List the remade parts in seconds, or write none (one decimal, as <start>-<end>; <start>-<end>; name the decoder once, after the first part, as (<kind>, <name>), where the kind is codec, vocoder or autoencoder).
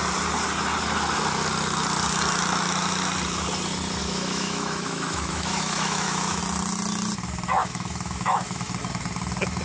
4.0-6.4 (autoencoder, DAC-VAE); 7.6-8.7